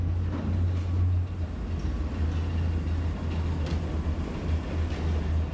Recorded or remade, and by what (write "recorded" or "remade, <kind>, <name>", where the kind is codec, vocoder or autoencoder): recorded